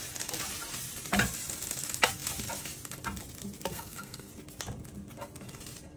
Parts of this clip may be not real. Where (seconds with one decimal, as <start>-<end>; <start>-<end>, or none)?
3.7-4.3